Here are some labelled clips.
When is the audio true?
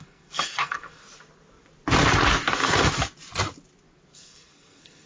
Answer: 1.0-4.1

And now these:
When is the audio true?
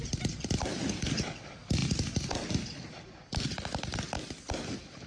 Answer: 0.0-5.1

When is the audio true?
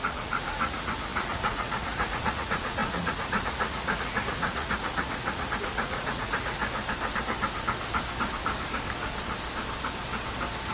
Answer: 6.6-10.7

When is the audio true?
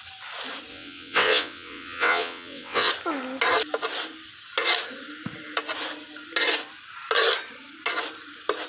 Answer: 0.0-0.7; 2.9-8.7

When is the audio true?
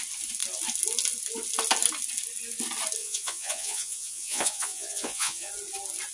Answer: 0.0-3.0; 5.5-6.1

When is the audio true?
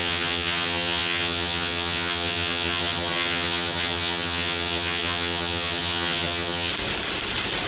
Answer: 6.7-7.7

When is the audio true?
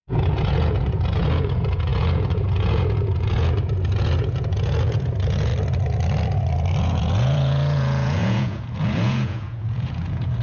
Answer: 5.5-6.8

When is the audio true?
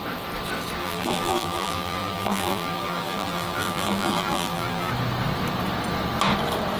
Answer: 0.0-0.8; 4.9-6.8